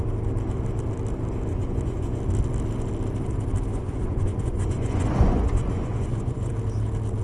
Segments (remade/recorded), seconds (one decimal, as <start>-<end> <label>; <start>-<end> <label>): 0.0-1.5 recorded; 1.5-2.2 remade; 2.2-3.7 recorded; 3.7-6.5 remade; 6.5-7.2 recorded